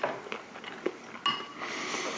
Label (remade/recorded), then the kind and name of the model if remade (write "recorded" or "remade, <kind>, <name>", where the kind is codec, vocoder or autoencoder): recorded